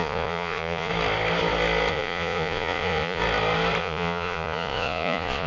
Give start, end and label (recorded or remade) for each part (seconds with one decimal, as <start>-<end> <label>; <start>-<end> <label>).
0.0-0.9 remade; 0.9-1.9 recorded; 1.9-3.2 remade; 3.2-3.8 recorded; 3.8-5.5 remade